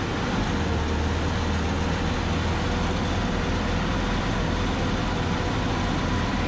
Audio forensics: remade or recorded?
recorded